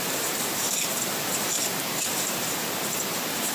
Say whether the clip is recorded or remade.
remade